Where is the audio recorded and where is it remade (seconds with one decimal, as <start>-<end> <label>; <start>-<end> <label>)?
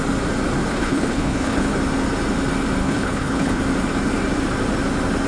0.0-0.7 recorded; 0.7-1.7 remade; 1.7-2.8 recorded; 2.8-3.6 remade; 3.6-5.3 recorded